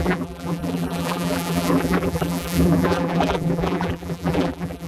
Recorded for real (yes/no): no